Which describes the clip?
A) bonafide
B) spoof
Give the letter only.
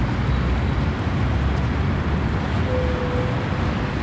A